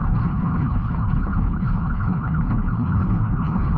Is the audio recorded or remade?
remade